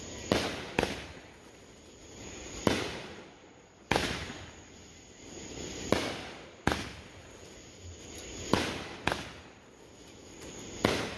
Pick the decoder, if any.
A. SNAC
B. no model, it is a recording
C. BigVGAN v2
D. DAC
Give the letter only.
B